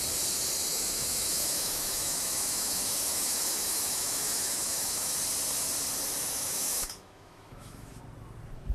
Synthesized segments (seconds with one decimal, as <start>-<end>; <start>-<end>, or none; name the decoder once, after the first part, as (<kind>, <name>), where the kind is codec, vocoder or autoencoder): 0.7-5.2 (autoencoder, DAC-VAE); 6.2-8.0